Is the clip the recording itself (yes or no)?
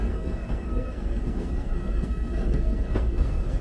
no